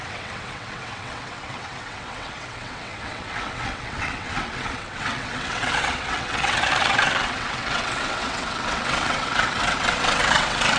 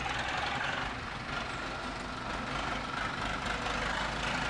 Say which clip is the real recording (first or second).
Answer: second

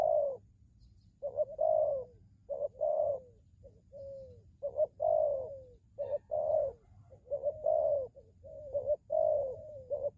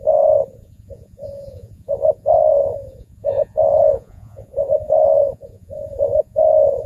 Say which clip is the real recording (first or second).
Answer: first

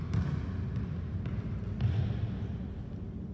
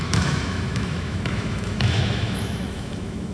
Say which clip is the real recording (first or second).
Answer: first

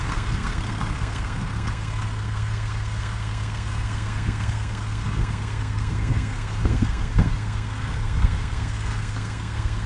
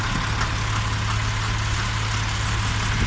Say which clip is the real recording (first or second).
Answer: second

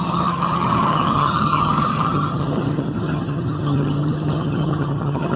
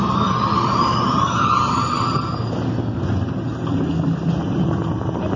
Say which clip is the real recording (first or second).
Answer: second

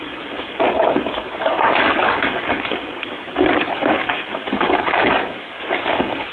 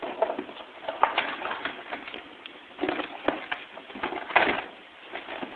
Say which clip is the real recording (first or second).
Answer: second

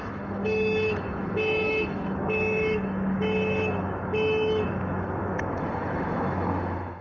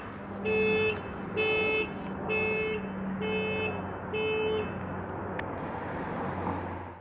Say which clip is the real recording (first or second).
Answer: second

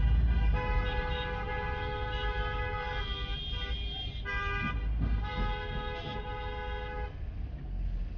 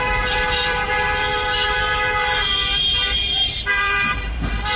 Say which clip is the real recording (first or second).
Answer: first